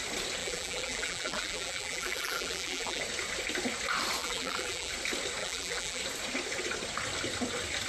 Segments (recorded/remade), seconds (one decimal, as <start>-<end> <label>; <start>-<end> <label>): 0.0-0.4 recorded; 0.4-3.0 remade; 3.0-4.2 recorded; 4.2-4.9 remade; 4.9-5.4 recorded; 5.4-6.0 remade; 6.0-7.9 recorded